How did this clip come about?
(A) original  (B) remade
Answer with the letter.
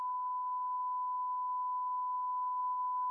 A